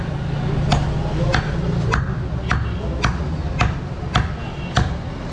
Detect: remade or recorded recorded